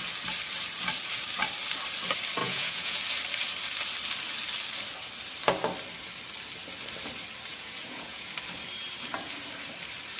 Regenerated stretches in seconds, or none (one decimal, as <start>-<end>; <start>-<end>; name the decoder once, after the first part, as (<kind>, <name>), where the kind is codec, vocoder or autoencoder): 2.4-3.0 (vocoder, Vocos); 7.5-8.3